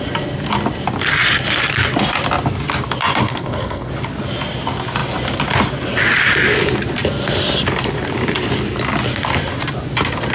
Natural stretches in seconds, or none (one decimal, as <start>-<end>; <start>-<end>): 0.0-3.2; 3.9-10.3